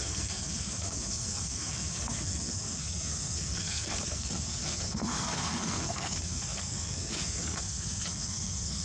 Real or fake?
fake